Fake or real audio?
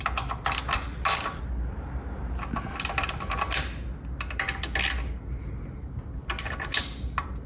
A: real